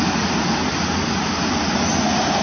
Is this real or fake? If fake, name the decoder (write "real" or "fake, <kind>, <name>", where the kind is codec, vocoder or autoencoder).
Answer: real